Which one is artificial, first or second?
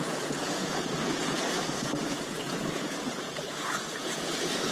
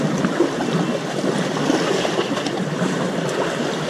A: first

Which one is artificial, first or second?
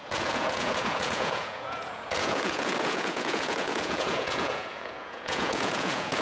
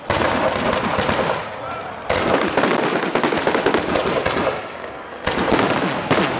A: first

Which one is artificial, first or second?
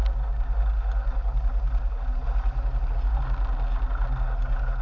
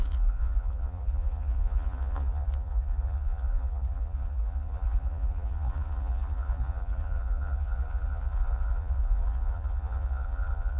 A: second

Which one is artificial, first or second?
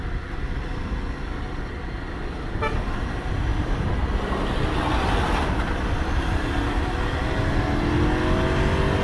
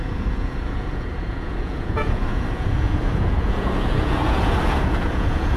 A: second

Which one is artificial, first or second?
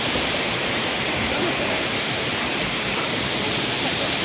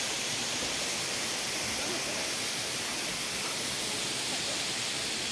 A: first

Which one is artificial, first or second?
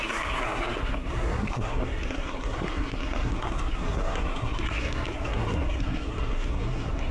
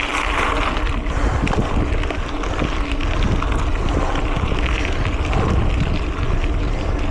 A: first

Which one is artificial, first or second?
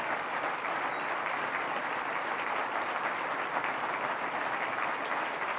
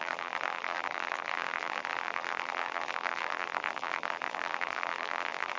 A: second